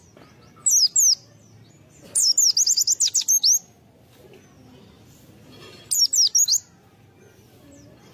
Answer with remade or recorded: recorded